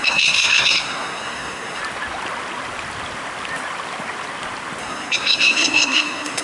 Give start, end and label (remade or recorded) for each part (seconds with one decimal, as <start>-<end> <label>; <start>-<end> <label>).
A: 0.0-1.8 remade; 1.8-4.8 recorded; 4.8-6.4 remade

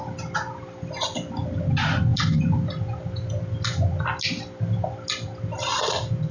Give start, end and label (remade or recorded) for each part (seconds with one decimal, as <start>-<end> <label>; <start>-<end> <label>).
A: 0.0-6.3 recorded

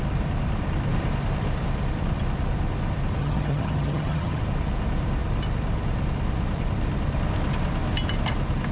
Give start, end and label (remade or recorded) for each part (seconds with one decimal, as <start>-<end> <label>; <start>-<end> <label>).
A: 0.0-3.2 recorded; 3.2-4.4 remade; 4.4-8.7 recorded

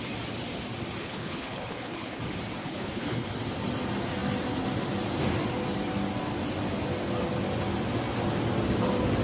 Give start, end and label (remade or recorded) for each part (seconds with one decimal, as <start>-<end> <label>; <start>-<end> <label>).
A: 0.0-1.0 recorded; 1.0-2.2 remade; 2.2-2.6 recorded; 2.6-3.3 remade; 3.3-9.2 recorded